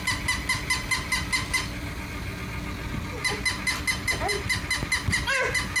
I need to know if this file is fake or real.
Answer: real